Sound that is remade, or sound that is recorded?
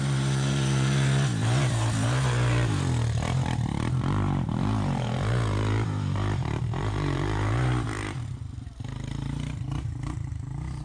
remade